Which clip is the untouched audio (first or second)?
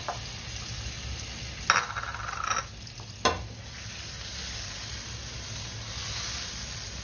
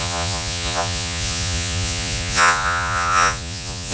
first